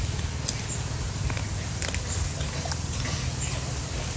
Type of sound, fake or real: real